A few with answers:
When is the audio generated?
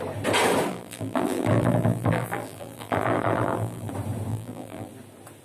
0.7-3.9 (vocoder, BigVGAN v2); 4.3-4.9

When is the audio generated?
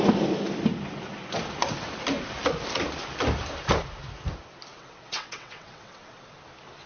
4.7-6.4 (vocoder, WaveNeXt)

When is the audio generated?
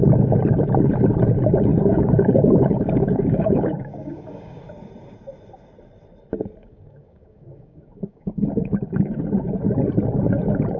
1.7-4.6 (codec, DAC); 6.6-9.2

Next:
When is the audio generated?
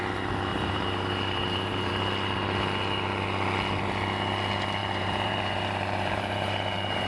0.5-1.9 (vocoder, BigVGAN v2); 4.8-7.1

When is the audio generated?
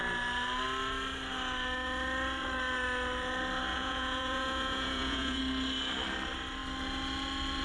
3.7-5.4 (vocoder, Vocos)